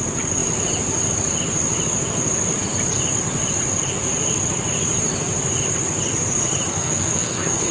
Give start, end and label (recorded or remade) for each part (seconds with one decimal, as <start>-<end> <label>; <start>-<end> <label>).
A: 0.0-6.7 recorded; 6.7-7.7 remade